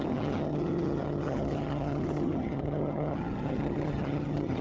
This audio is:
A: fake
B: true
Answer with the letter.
A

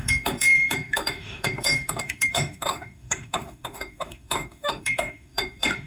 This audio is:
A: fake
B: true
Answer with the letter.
A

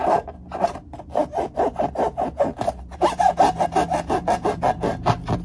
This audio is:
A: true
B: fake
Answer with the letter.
A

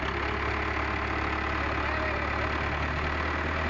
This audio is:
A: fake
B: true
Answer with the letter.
B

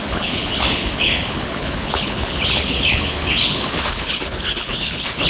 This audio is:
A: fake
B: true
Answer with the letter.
A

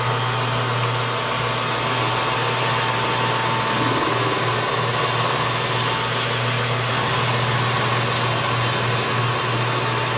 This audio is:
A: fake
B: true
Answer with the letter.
B